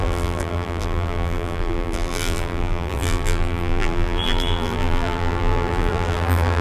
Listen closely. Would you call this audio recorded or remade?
remade